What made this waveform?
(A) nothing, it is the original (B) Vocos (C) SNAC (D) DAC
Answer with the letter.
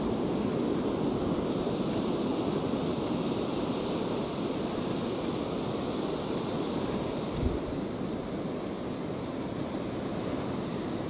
A